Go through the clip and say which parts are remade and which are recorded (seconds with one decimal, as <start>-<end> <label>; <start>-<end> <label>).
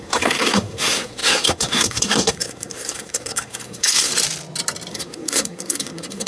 0.0-4.1 remade; 4.1-4.9 recorded; 4.9-6.3 remade